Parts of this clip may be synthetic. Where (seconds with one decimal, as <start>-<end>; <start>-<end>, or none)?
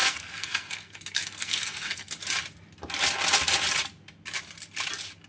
0.0-2.1